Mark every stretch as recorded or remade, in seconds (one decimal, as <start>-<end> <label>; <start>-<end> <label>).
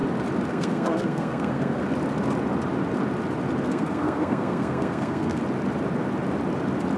0.0-0.5 recorded; 0.5-1.8 remade; 1.8-3.7 recorded; 3.7-5.4 remade; 5.4-7.0 recorded